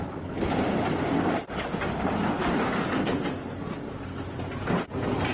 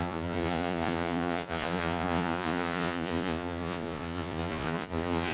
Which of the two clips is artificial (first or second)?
second